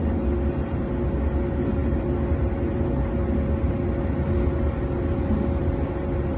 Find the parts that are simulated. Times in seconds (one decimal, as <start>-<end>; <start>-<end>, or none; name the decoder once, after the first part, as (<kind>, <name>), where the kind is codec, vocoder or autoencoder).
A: none